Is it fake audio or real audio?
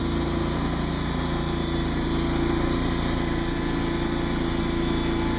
real